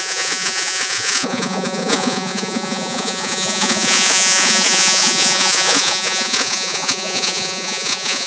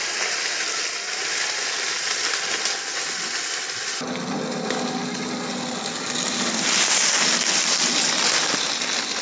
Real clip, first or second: second